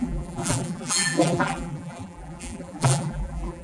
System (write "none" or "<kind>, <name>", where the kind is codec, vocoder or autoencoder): vocoder, BigVGAN v2